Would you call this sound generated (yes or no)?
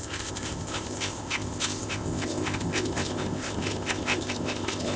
yes